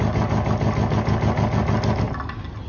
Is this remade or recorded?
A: recorded